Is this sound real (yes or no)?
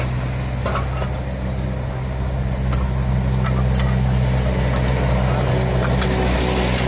yes